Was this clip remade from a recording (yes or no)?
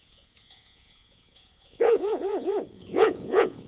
yes